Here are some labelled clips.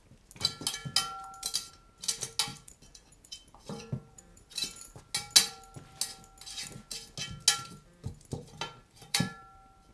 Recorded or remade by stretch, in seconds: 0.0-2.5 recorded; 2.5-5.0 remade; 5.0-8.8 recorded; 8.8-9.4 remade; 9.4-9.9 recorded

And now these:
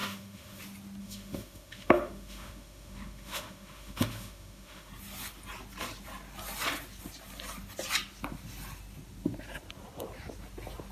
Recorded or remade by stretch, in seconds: 0.0-0.6 remade; 0.6-1.0 recorded; 1.0-4.9 remade; 4.9-10.9 recorded